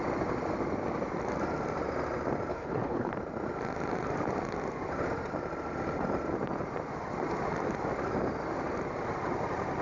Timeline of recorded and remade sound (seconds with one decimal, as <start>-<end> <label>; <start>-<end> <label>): 0.0-2.5 recorded; 2.5-3.1 remade; 3.1-9.8 recorded